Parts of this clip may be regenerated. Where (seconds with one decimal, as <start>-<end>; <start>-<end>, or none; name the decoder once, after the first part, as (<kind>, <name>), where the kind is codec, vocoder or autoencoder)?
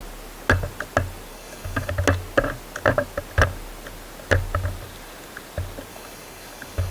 1.3-1.9 (codec, DAC); 5.9-6.9